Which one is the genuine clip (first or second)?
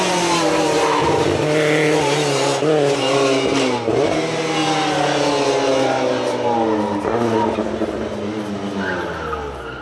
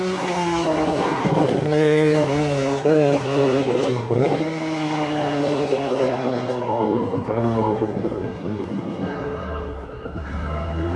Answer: first